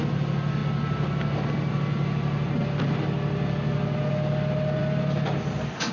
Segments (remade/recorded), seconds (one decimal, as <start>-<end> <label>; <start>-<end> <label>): 0.0-5.9 recorded